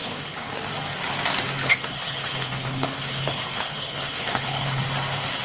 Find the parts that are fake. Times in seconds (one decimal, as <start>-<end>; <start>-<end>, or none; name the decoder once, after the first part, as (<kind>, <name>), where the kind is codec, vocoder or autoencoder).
0.0-0.7 (codec, HILCodec); 1.6-4.8